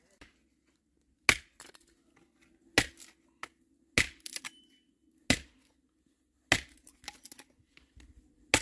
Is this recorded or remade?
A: recorded